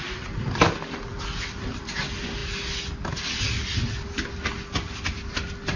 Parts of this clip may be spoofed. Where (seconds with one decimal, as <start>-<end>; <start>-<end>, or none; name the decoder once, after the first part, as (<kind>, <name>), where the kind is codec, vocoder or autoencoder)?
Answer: none